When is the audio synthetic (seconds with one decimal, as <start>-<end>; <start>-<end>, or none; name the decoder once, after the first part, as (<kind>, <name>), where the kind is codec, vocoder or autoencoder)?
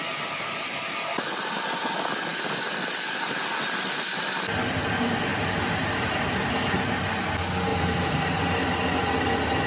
7.7-8.7 (vocoder, BigVGAN v2)